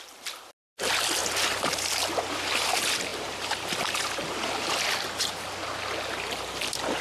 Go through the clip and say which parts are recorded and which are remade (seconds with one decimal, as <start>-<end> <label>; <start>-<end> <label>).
0.0-7.0 recorded